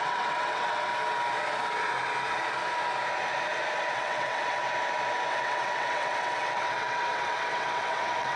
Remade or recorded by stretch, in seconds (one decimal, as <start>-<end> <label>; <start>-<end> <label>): 0.0-0.9 remade; 0.9-3.9 recorded; 3.9-4.6 remade; 4.6-5.3 recorded; 5.3-8.4 remade